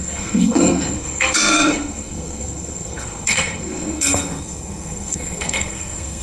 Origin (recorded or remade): remade